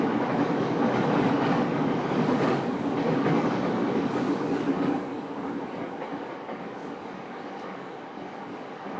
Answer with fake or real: fake